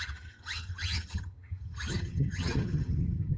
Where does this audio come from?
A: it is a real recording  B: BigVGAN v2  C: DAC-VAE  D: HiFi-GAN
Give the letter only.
D